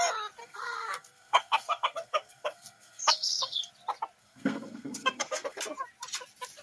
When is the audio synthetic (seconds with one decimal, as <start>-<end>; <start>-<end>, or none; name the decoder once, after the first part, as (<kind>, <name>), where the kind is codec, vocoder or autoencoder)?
0.4-3.7 (codec, SNAC); 4.2-5.6